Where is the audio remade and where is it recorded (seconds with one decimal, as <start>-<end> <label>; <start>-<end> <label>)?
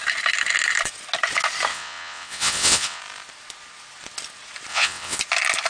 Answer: 0.0-1.7 recorded; 1.7-3.0 remade; 3.0-4.7 recorded; 4.7-5.2 remade; 5.2-5.7 recorded